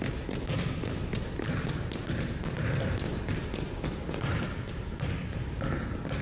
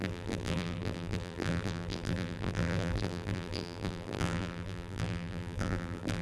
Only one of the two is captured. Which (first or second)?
first